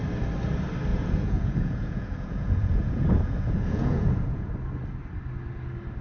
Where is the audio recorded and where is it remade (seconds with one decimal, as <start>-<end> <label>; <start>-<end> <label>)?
0.0-0.9 recorded; 0.9-4.5 remade; 4.5-6.0 recorded